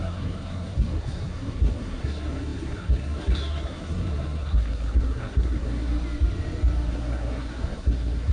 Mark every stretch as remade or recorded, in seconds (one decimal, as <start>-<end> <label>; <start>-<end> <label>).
0.0-5.9 remade; 5.9-6.9 recorded; 6.9-8.3 remade